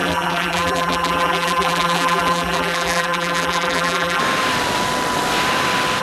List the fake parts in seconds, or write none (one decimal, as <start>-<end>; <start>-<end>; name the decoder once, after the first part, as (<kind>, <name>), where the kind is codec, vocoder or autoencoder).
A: 0.0-4.2 (vocoder, BigVGAN v2)